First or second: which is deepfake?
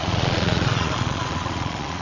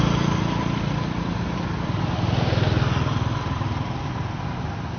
first